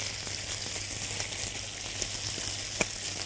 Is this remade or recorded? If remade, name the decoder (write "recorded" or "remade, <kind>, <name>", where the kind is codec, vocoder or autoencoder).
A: recorded